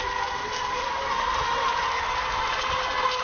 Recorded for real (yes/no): yes